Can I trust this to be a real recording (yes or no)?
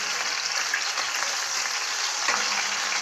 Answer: yes